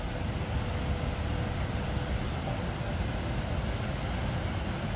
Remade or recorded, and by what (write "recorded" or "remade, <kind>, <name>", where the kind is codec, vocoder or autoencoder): recorded